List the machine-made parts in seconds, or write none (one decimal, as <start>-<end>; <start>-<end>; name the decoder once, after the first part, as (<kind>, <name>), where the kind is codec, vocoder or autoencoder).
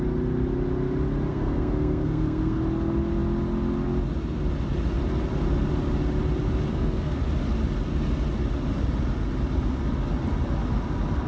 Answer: 1.3-2.6 (codec, SNAC); 6.7-7.2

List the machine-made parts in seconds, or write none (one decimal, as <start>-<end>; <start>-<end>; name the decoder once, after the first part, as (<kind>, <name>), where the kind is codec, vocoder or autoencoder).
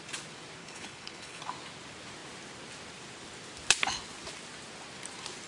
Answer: 0.6-1.4 (codec, HILCodec)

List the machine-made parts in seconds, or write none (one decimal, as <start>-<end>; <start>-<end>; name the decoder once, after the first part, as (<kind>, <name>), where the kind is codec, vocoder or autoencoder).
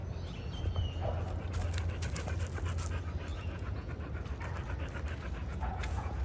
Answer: 3.3-3.9 (vocoder, Vocos); 5.4-6.2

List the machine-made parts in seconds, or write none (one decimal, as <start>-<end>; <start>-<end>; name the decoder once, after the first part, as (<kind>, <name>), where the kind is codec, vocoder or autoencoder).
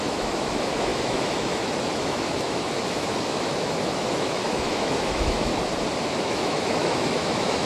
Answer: 0.0-5.5 (autoencoder, DAC-VAE); 6.1-7.7